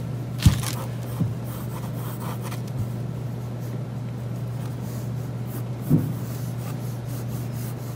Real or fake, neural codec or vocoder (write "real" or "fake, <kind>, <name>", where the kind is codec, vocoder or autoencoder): real